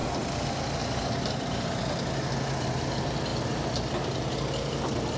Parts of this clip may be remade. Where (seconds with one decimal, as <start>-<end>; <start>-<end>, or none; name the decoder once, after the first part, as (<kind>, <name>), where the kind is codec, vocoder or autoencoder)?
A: none